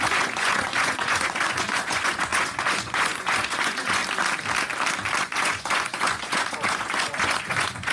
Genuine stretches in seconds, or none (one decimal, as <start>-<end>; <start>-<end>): 4.0-5.2

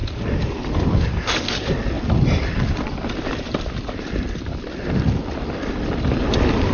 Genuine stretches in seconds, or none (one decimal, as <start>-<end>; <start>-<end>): none

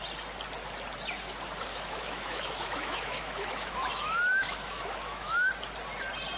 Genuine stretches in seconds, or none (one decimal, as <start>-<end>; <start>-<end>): 0.0-1.7; 5.5-6.4

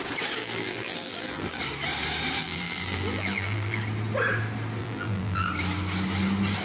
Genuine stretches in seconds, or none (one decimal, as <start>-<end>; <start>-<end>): 0.0-0.4; 1.6-2.4; 3.8-4.8; 5.5-6.6

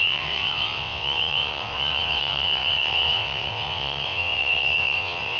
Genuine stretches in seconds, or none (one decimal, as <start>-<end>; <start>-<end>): none

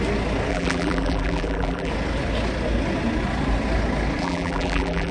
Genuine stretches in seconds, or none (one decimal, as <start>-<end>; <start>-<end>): 0.0-0.5; 1.9-4.2

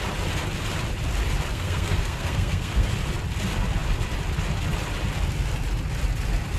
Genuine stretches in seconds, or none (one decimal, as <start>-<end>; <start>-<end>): 0.0-1.5; 2.9-6.6